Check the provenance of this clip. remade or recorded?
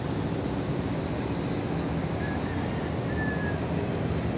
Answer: recorded